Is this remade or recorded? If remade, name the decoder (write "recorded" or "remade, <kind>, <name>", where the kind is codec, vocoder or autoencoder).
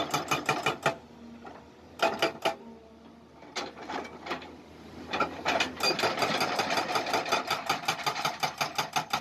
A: recorded